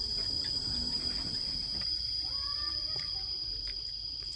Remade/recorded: remade